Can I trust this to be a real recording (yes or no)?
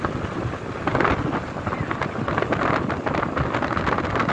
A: yes